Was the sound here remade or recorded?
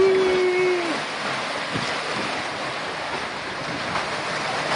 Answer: recorded